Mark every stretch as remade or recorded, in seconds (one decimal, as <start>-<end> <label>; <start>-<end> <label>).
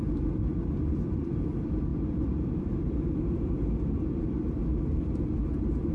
0.0-5.9 remade